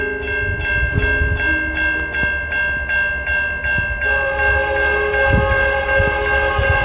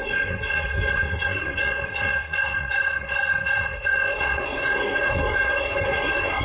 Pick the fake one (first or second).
second